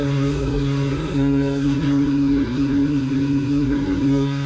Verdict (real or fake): fake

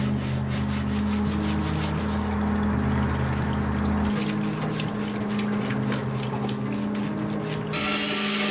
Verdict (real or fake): real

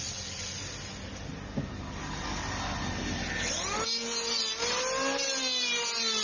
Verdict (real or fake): real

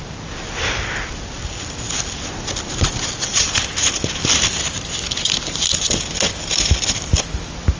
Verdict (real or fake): real